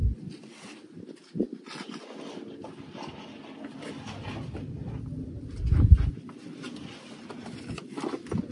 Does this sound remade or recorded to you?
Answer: recorded